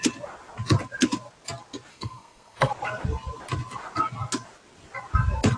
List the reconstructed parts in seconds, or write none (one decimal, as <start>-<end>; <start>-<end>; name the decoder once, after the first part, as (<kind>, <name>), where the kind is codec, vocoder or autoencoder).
1.9-2.7 (codec, SNAC)